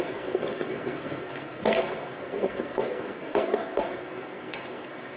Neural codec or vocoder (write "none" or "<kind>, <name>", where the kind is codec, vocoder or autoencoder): codec, SNAC